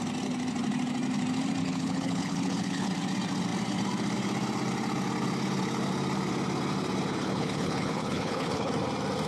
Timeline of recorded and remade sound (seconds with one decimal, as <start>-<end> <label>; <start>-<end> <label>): 0.0-1.6 recorded; 1.6-2.9 remade; 2.9-7.1 recorded; 7.1-8.7 remade; 8.7-9.3 recorded